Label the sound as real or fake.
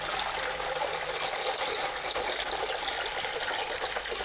real